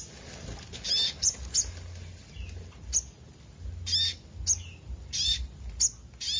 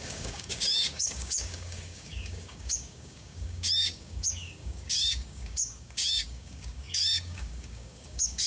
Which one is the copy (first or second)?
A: second